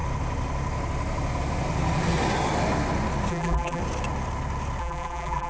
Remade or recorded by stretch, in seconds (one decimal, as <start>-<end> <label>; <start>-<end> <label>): 0.0-3.3 recorded; 3.3-3.8 remade; 3.8-4.8 recorded; 4.8-5.5 remade